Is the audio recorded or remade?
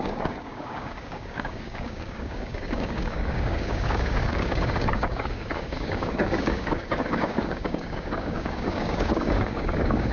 remade